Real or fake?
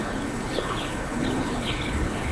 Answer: fake